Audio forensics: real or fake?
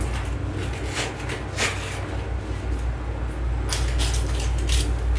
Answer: real